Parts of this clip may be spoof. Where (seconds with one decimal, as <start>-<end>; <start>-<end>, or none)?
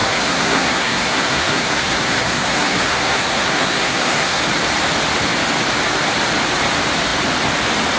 0.0-4.4